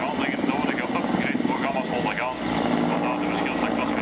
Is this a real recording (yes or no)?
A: yes